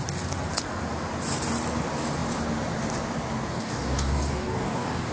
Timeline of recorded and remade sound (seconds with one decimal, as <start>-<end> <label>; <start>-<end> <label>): 0.0-3.5 recorded; 3.5-5.1 remade